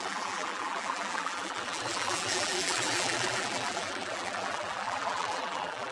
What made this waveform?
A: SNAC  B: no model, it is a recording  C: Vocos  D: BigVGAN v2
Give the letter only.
D